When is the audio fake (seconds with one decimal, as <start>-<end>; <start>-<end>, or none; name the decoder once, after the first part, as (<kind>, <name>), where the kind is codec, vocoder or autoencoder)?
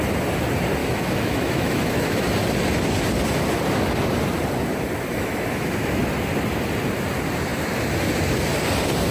0.8-2.3 (autoencoder, DAC-VAE); 5.1-6.0